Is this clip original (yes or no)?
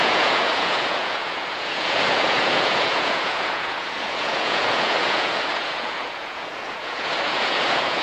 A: no